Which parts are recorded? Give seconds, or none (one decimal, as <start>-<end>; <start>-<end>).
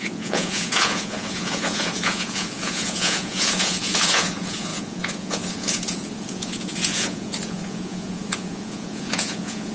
none